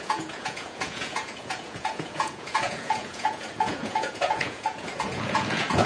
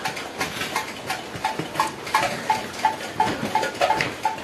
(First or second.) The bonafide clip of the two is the second